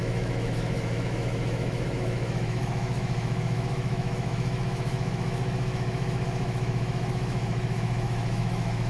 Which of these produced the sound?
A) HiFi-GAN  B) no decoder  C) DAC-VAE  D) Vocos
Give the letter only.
C